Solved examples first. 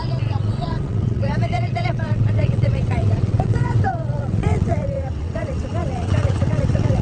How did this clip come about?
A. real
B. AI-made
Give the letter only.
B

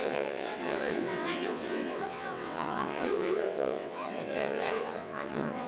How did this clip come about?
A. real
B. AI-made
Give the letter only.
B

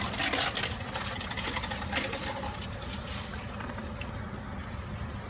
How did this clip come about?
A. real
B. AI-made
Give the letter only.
A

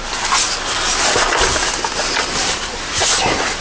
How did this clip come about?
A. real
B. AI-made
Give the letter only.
A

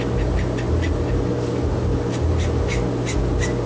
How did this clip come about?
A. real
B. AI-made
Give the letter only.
A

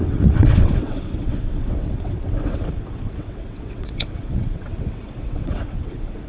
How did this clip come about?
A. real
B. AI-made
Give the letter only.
B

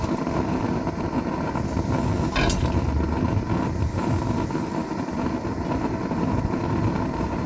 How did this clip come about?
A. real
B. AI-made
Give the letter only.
A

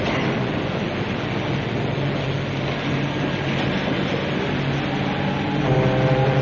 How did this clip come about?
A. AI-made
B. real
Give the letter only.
B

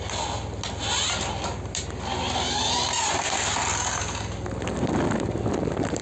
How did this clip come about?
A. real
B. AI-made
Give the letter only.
A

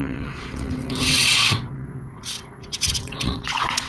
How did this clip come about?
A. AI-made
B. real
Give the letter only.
A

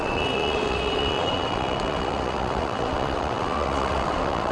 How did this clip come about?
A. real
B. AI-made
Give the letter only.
B